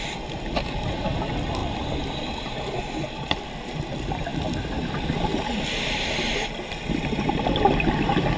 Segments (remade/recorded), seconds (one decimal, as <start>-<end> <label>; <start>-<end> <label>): 0.0-1.6 recorded; 1.6-3.5 remade; 3.5-8.4 recorded